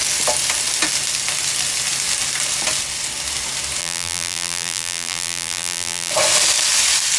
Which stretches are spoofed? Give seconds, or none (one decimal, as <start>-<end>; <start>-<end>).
3.8-6.1